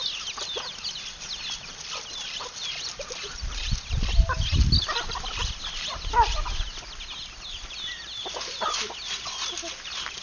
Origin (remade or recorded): recorded